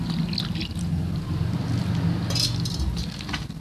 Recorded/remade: recorded